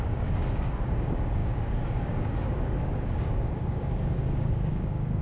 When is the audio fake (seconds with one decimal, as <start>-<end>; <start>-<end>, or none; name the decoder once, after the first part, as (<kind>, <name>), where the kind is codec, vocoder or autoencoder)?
0.0-5.2 (codec, DAC)